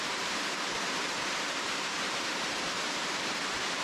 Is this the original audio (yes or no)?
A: no